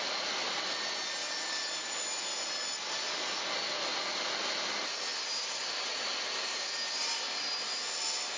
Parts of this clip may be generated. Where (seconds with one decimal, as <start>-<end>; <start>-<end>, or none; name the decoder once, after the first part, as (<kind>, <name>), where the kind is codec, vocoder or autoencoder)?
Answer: none